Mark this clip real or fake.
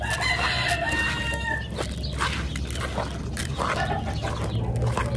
real